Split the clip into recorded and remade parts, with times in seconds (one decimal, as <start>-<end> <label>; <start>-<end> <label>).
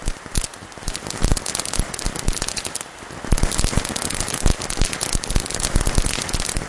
0.0-6.7 recorded